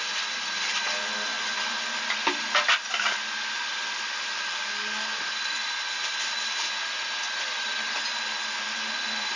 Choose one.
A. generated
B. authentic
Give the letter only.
B